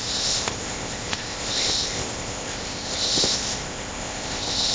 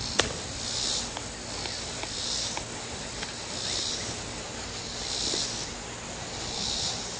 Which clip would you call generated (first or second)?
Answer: first